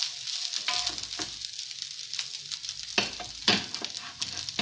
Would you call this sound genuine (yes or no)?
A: yes